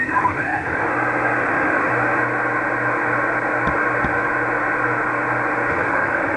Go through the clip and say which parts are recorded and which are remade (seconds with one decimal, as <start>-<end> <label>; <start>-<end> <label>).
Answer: 0.0-0.9 remade; 0.9-1.4 recorded; 1.4-1.9 remade; 1.9-5.7 recorded; 5.7-6.4 remade